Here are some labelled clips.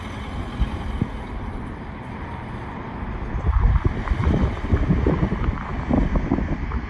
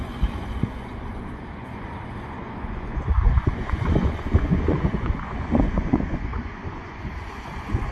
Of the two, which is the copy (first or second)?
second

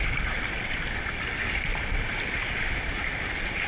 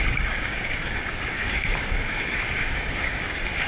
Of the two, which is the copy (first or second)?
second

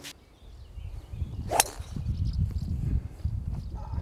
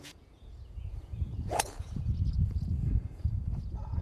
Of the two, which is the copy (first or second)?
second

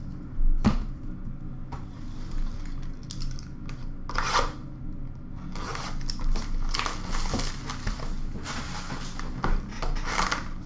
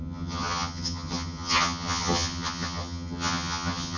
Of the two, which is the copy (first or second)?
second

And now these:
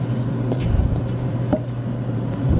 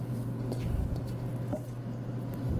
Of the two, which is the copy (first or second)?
first